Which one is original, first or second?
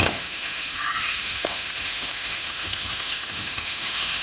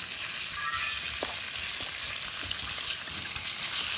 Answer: second